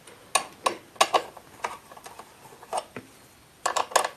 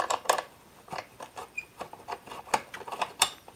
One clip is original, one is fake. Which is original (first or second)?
first